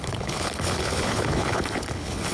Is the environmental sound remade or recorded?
remade